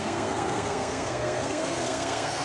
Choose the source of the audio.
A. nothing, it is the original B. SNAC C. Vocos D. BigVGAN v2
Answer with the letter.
B